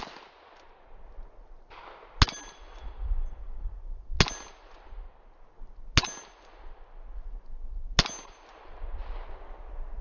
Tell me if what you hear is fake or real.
real